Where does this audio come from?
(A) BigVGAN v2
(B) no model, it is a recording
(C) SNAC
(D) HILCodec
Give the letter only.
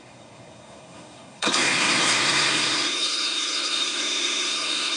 C